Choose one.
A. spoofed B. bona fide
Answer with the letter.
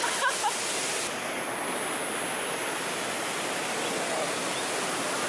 B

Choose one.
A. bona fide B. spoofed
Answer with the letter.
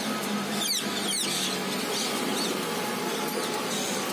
A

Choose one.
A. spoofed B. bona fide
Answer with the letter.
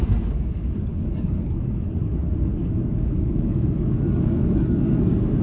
A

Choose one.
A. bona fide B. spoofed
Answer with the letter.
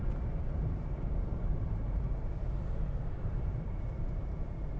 B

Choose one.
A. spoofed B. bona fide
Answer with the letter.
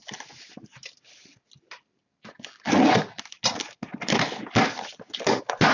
B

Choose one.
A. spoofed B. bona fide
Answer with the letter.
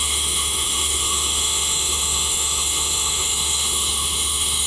A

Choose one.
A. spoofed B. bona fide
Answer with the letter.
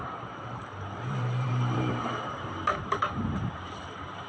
A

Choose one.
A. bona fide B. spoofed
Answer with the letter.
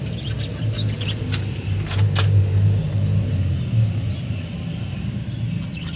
A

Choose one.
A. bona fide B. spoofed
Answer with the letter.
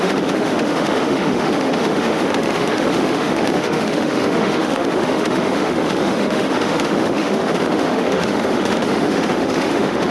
B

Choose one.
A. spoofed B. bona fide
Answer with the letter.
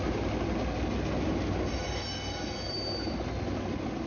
B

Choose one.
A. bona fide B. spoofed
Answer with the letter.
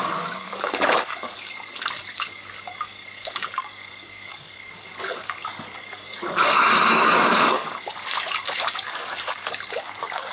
B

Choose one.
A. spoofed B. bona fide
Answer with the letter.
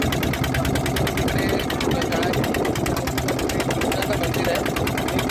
B